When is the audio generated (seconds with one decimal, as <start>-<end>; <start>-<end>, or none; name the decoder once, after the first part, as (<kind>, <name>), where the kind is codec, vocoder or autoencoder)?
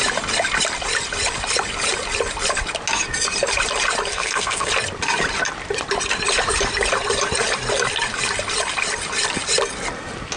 4.1-4.7 (codec, SNAC)